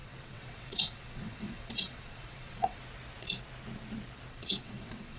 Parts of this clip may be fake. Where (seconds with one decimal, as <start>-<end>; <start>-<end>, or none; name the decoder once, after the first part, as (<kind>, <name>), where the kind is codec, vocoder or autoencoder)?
0.0-2.8 (vocoder, WaveNeXt); 4.3-5.2